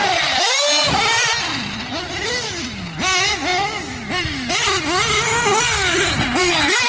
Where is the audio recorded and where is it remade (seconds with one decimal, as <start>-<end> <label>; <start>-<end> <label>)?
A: 0.0-6.9 recorded